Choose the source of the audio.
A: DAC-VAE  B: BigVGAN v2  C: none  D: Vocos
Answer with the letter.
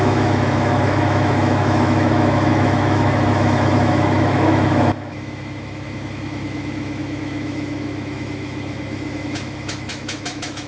A